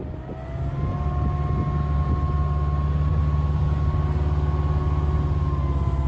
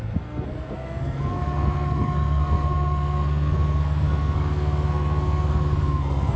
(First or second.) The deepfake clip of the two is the second